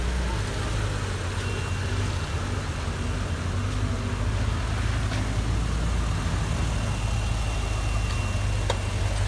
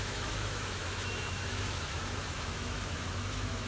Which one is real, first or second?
first